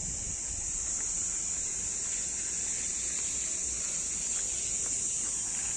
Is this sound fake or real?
real